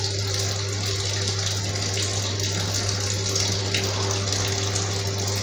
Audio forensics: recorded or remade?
recorded